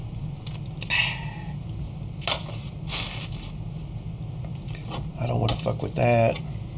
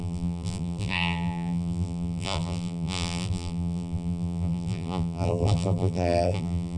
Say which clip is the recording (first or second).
first